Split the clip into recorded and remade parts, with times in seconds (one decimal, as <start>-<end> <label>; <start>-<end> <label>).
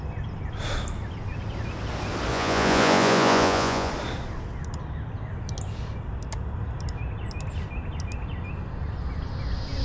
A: 0.0-2.3 recorded; 2.3-3.9 remade; 3.9-9.8 recorded